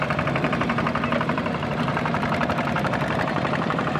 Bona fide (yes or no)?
no